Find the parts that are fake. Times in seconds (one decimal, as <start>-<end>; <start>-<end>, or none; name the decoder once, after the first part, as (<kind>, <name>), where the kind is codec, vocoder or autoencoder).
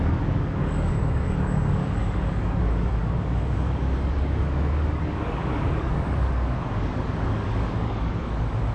0.0-8.7 (codec, DAC)